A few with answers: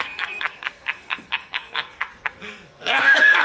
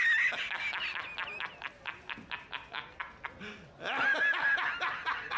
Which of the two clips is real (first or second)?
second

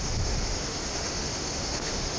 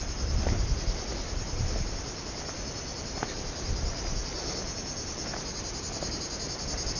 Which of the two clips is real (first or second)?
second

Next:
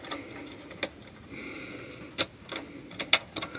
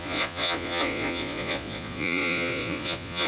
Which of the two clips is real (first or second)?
first